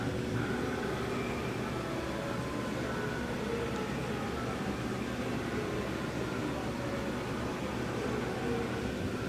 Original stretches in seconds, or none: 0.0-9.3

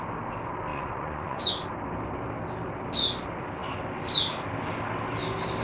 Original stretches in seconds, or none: 0.0-0.7; 1.5-5.6

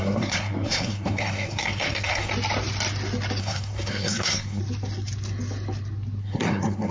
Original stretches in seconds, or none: 2.3-3.4; 4.6-6.2

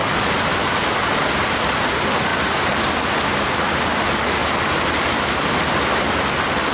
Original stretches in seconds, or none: 0.0-6.7

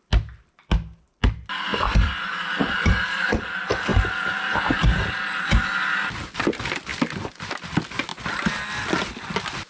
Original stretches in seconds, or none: 0.0-1.7; 3.4-3.9; 5.1-6.9; 7.5-8.1; 8.7-9.7

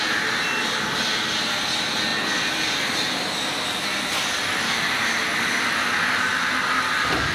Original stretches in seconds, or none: 0.0-7.3